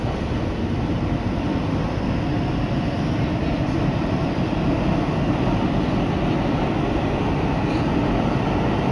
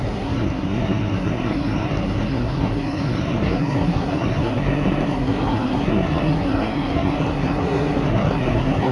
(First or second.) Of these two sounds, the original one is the first